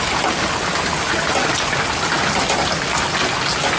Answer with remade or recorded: recorded